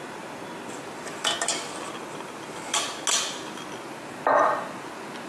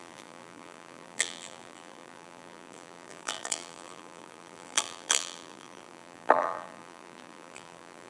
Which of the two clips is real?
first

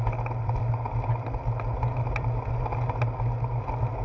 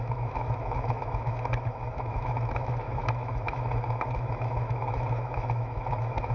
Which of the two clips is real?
first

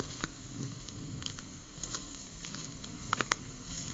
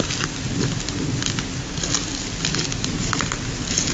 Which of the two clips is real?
second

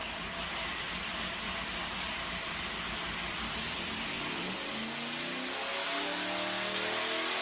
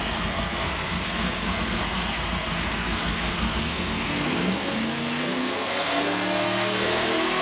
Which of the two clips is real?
first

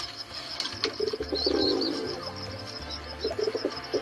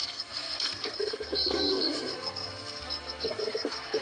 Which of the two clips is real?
first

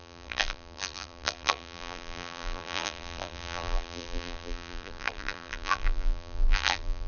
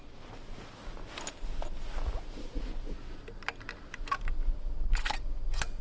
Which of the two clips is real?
second